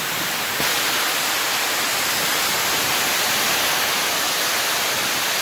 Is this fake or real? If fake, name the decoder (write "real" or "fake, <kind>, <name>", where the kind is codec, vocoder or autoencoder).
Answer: real